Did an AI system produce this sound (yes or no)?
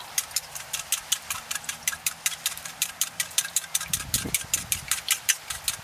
yes